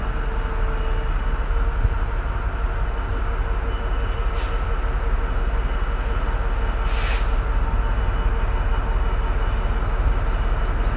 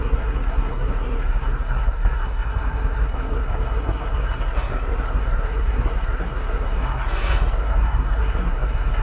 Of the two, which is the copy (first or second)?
second